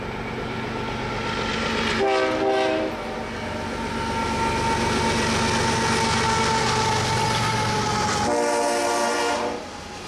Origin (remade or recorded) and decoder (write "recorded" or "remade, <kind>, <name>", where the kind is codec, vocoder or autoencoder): recorded